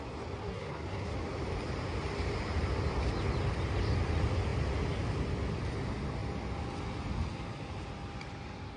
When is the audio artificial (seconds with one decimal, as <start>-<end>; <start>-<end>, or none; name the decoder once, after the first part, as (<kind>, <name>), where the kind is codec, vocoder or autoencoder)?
0.4-1.1 (codec, SNAC)